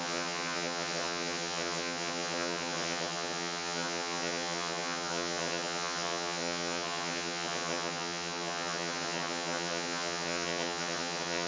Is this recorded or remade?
remade